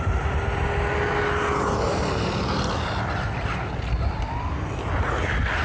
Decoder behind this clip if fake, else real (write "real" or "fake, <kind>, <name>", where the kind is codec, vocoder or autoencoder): real